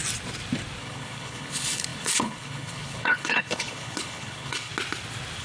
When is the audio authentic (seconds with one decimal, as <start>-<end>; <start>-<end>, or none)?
0.0-0.8; 4.7-5.4